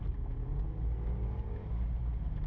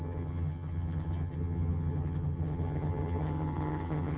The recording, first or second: first